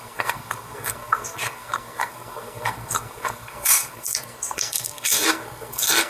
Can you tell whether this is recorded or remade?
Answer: remade